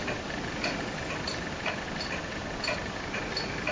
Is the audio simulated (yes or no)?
no